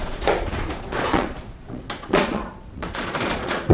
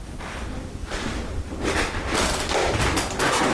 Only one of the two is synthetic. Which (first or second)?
first